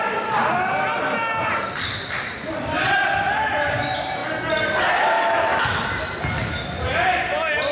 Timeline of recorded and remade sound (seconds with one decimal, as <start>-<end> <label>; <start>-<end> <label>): 0.0-0.5 remade; 0.5-3.5 recorded; 3.5-4.2 remade; 4.2-5.7 recorded; 5.7-7.7 remade